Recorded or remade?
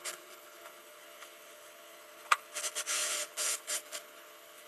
remade